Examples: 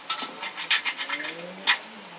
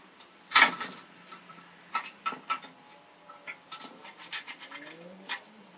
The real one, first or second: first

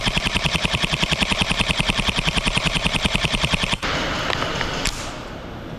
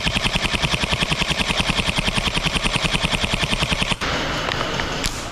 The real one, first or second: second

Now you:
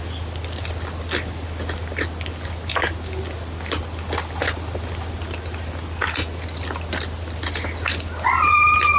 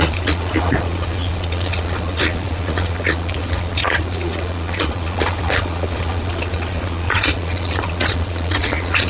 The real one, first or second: first